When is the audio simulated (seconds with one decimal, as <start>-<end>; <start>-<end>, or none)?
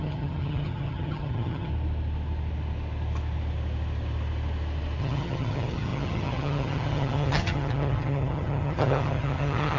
0.0-1.7; 5.0-9.8